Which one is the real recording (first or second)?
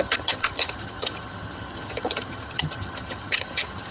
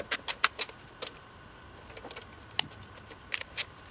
second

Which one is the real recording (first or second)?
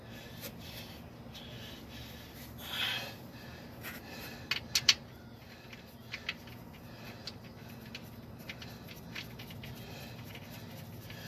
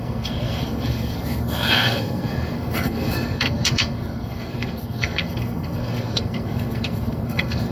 first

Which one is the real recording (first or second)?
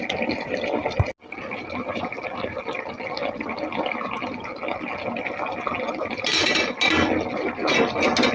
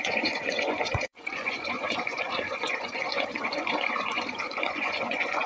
first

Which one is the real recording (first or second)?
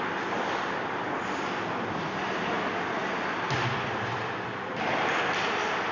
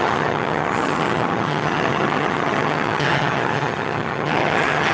first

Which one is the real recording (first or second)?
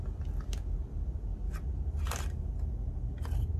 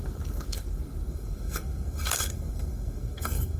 first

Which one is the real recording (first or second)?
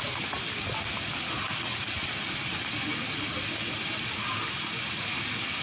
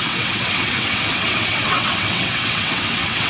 first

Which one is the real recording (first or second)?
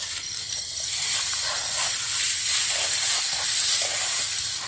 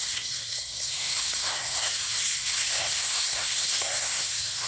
first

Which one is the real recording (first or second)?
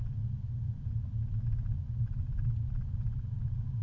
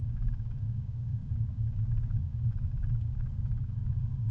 first